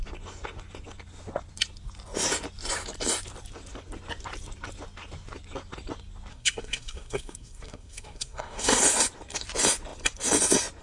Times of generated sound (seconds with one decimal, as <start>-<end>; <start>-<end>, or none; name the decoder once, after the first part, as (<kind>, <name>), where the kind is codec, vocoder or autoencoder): 6.3-8.8 (codec, SNAC)